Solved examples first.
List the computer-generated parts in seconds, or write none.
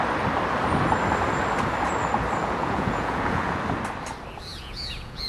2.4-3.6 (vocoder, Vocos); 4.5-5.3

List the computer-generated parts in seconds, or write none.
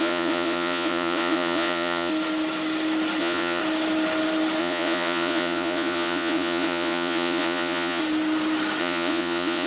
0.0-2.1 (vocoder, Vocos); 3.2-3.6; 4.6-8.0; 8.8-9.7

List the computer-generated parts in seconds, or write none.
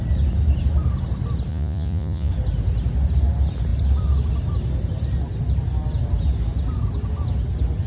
1.5-2.3 (vocoder, Vocos)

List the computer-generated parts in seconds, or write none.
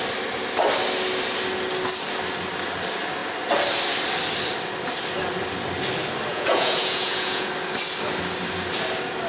6.3-7.5 (vocoder, Vocos)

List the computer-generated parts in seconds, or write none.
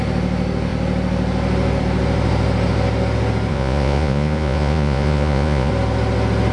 3.5-5.7 (vocoder, Vocos)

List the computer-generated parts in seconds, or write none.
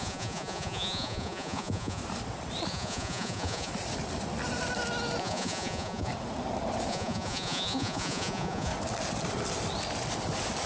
0.0-2.0 (vocoder, Vocos); 2.7-3.7; 5.2-6.1; 6.9-8.7